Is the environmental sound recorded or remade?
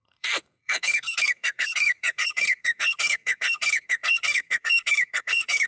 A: remade